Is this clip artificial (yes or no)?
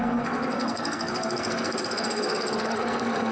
yes